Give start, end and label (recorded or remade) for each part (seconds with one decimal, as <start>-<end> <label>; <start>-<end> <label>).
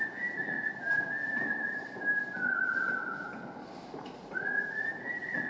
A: 0.0-0.7 remade; 0.7-4.0 recorded; 4.0-5.5 remade